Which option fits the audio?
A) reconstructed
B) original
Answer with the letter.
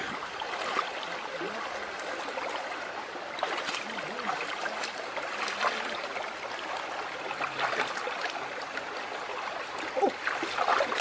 B